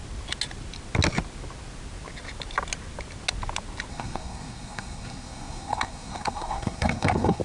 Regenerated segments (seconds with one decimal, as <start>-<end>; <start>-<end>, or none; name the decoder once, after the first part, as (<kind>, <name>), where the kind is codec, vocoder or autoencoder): 3.9-7.4 (codec, SNAC)

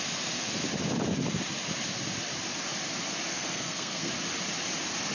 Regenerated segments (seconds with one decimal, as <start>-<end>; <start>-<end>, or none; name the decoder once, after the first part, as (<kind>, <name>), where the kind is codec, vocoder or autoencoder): 3.3-4.1 (codec, SNAC)

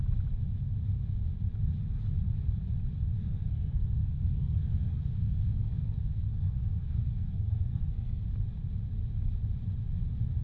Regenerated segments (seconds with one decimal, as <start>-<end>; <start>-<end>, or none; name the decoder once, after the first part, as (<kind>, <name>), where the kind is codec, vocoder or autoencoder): 3.2-8.2 (codec, SNAC)

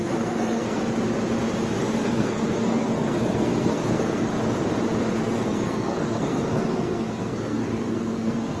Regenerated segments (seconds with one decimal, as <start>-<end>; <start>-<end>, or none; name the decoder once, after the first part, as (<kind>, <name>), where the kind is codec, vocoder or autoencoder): 0.0-0.8 (codec, SNAC); 2.0-4.3; 5.2-8.6

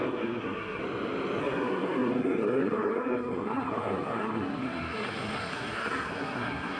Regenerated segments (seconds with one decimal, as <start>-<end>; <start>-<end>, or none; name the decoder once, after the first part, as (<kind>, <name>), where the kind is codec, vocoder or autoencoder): 0.0-0.8 (codec, SNAC); 1.4-6.8

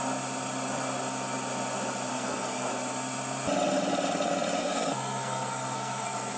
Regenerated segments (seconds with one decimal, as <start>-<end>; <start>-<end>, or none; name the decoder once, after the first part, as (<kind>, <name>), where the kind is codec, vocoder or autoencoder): 2.1-2.7 (codec, SNAC); 4.6-6.4

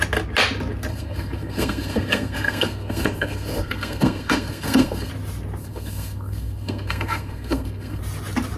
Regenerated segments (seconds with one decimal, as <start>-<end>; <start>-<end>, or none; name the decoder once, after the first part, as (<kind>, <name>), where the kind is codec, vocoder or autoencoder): 0.9-5.1 (codec, SNAC); 5.6-8.0